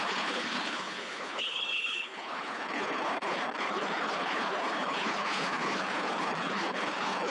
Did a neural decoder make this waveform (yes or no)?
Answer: yes